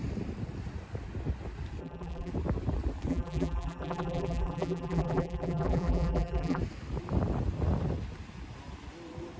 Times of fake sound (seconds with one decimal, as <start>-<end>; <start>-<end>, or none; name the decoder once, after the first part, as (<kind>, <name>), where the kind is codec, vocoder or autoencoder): 1.8-2.3 (vocoder, BigVGAN v2); 3.1-6.6